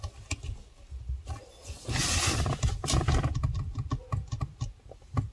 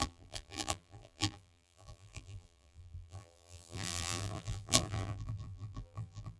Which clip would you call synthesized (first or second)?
second